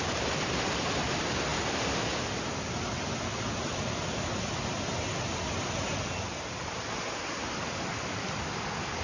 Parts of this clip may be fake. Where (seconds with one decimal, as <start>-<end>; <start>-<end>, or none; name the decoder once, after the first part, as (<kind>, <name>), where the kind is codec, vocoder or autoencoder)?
none